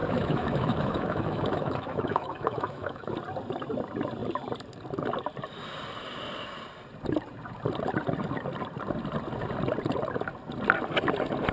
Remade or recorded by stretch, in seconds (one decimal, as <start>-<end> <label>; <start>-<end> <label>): 0.0-3.1 remade; 3.1-11.5 recorded

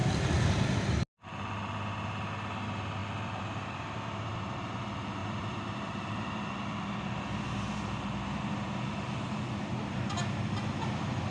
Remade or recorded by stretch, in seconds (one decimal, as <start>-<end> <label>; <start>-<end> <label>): 0.0-0.9 remade; 0.9-3.0 recorded; 3.0-4.5 remade; 4.5-5.2 recorded; 5.2-6.5 remade; 6.5-11.3 recorded

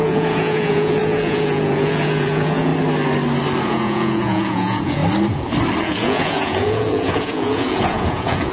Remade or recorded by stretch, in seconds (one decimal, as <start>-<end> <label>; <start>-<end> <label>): 0.0-2.7 remade; 2.7-3.6 recorded; 3.6-5.0 remade; 5.0-5.8 recorded; 5.8-8.5 remade

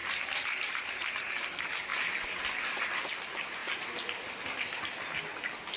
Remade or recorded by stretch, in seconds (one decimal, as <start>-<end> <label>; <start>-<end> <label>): 0.0-1.3 remade; 1.3-5.8 recorded

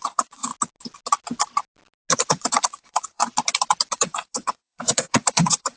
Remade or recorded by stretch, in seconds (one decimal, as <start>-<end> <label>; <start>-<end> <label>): 0.0-0.5 remade; 0.5-2.3 recorded; 2.3-3.2 remade; 3.2-3.9 recorded; 3.9-5.8 remade